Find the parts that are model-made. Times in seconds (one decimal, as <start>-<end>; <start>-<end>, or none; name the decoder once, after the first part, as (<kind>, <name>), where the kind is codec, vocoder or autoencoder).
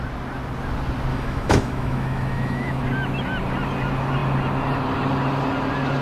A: 1.1-2.8 (autoencoder, DAC-VAE)